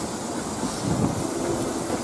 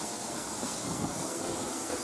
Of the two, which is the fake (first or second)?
second